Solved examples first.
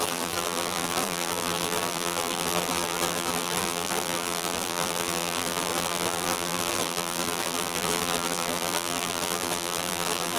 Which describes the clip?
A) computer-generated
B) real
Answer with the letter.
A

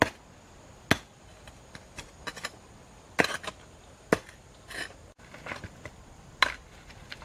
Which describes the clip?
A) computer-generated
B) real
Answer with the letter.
B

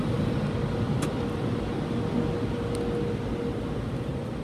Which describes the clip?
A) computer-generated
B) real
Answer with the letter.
B